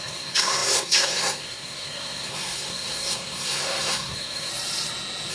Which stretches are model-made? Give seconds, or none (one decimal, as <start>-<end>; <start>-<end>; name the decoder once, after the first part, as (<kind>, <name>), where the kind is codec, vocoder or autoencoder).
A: 0.0-4.5 (codec, SNAC)